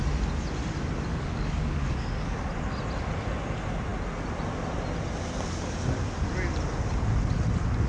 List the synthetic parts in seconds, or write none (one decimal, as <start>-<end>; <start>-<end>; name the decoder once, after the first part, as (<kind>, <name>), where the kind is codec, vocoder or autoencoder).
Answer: 1.1-2.5 (codec, DAC)